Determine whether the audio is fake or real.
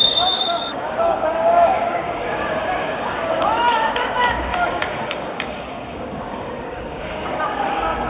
fake